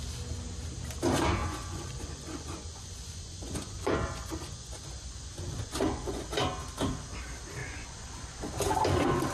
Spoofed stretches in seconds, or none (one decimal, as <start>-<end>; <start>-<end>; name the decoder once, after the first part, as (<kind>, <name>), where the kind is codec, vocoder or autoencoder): 1.4-6.2 (vocoder, Vocos); 7.6-8.5